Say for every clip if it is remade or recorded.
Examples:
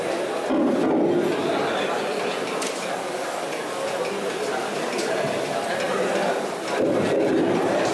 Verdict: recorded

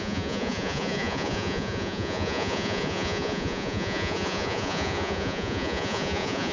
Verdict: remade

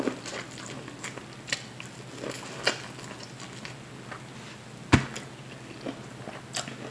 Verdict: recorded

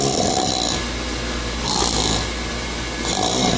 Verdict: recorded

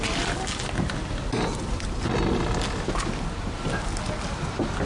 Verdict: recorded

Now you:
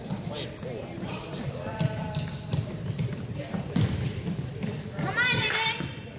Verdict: remade